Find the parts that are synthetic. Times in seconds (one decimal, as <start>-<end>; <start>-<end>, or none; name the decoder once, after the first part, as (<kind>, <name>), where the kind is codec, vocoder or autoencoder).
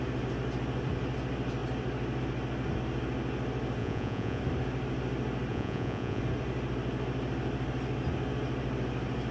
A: 3.8-4.4 (vocoder, Vocos); 5.5-6.2